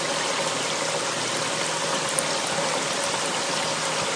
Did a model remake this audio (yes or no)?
no